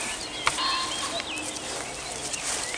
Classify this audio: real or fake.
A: real